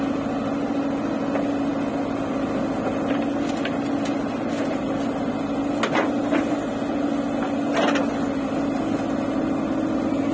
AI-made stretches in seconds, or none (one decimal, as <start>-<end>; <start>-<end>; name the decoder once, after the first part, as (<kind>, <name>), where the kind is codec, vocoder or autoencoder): none